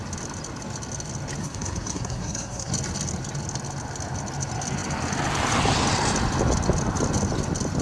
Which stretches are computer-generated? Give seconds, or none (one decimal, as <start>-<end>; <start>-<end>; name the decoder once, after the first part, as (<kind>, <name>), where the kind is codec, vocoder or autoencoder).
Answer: 1.4-2.7 (codec, SNAC)